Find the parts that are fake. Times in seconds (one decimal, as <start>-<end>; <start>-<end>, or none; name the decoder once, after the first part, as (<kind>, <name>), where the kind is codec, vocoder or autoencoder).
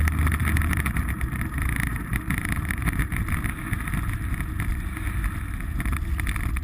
0.4-3.5 (vocoder, BigVGAN v2)